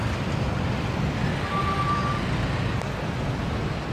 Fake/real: real